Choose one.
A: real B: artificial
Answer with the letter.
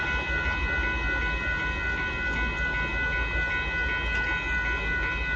A